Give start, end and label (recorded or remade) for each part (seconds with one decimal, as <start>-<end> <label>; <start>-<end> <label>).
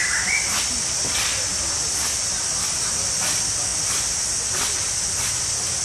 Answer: 0.0-5.8 recorded